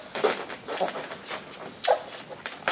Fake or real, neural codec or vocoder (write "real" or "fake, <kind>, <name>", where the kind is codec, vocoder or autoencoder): real